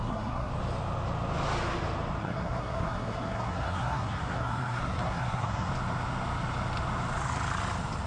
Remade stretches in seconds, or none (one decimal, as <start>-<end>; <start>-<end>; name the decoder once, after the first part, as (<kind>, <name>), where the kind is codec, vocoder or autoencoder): 0.0-0.5 (codec, SNAC); 2.2-5.7